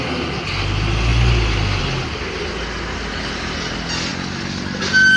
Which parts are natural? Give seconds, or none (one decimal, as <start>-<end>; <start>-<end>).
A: 0.0-5.2